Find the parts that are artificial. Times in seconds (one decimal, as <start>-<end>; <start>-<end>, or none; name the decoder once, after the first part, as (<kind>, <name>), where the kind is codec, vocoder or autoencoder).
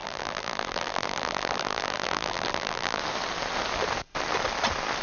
0.0-3.0 (vocoder, BigVGAN v2)